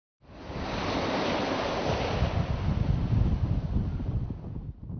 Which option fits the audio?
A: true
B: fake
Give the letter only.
A